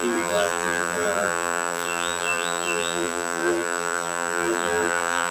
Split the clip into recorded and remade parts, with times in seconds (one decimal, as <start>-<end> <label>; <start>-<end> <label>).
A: 0.0-5.3 remade